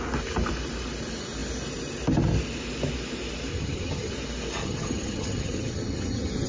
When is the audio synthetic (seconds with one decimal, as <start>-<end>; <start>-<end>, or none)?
3.5-4.1; 4.6-6.5